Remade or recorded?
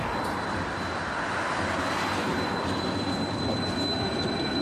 recorded